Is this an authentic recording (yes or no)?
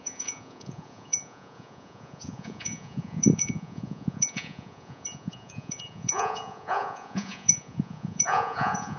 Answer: no